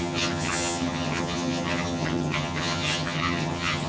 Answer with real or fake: fake